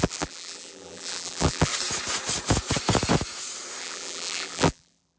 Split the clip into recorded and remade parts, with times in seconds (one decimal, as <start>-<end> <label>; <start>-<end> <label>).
0.0-1.7 remade; 1.7-3.8 recorded; 3.8-5.2 remade